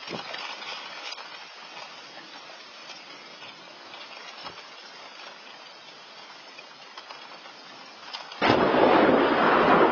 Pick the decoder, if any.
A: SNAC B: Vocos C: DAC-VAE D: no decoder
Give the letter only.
D